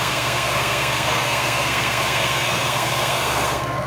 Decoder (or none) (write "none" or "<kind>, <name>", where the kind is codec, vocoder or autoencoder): codec, SNAC